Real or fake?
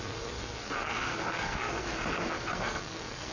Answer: fake